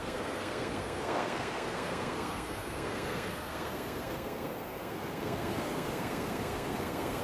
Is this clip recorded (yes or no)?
no